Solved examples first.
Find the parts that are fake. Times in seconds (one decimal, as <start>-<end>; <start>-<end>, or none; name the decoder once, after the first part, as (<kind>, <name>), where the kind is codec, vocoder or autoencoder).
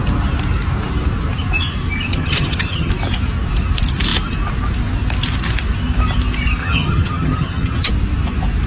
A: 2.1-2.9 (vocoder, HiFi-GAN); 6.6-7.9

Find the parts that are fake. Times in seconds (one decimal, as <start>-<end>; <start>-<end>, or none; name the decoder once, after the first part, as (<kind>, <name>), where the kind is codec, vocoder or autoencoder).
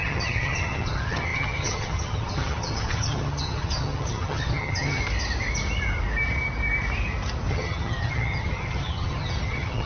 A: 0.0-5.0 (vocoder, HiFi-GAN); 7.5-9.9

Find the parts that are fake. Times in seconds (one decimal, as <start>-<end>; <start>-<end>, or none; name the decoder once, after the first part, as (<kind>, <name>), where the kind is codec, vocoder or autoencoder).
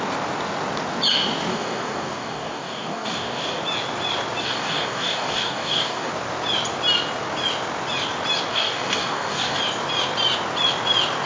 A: 1.5-3.6 (codec, DAC); 4.4-6.1; 8.5-9.6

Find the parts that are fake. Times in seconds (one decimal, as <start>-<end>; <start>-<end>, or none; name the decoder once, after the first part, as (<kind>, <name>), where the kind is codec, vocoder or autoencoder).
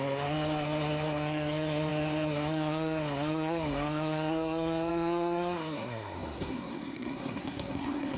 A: 0.0-8.2 (codec, SNAC)